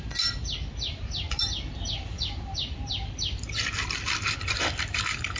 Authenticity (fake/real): fake